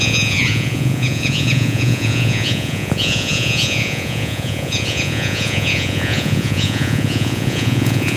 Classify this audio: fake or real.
fake